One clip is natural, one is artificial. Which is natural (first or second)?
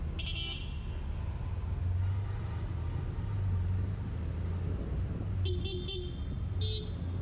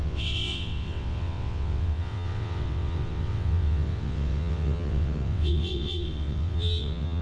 first